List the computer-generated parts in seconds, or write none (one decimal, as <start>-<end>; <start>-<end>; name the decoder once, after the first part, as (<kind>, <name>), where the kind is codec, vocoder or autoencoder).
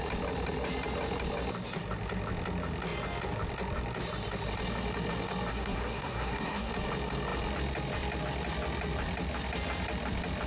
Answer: 5.5-6.7 (codec, SNAC)